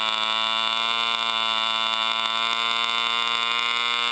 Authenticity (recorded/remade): recorded